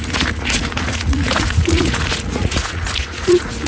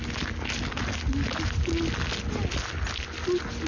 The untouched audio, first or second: second